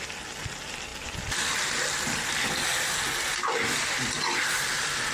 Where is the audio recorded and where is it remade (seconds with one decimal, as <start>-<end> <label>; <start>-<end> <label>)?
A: 0.0-5.1 recorded